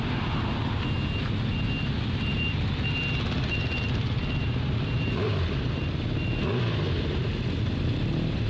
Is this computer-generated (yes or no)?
no